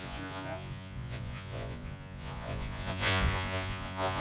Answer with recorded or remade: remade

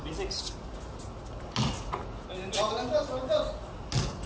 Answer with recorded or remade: recorded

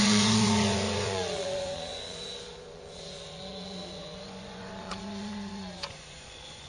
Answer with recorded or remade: remade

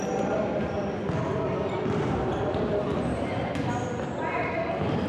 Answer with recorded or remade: recorded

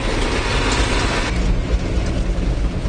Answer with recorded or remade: recorded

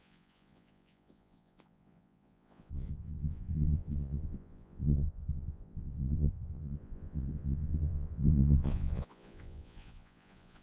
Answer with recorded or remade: remade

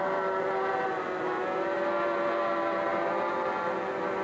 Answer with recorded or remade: recorded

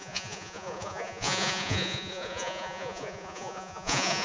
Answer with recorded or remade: remade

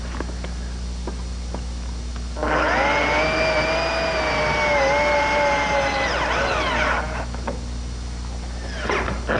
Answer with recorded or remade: recorded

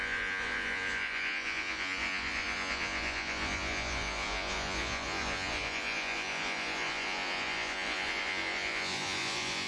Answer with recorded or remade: remade